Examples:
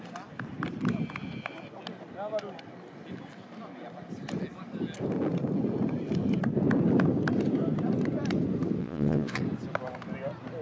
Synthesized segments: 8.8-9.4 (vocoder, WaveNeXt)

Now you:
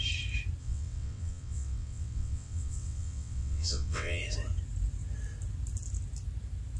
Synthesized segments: 0.6-4.2 (vocoder, WaveNeXt)

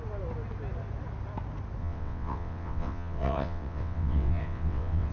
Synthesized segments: 1.8-5.1 (vocoder, WaveNeXt)

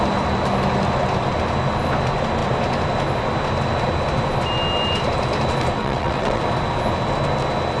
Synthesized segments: 5.8-6.4 (vocoder, WaveNeXt)

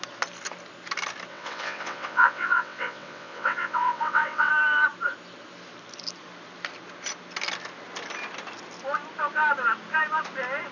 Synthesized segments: 1.3-4.5 (vocoder, WaveNeXt)

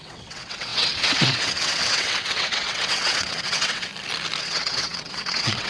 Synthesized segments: 0.0-3.9 (vocoder, WaveNeXt); 4.4-5.7

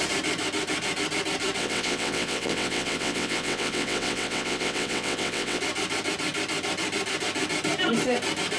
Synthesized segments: 1.6-5.6 (vocoder, WaveNeXt)